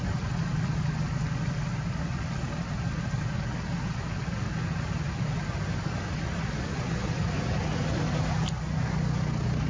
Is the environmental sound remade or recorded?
recorded